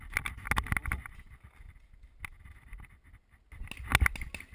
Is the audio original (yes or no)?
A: yes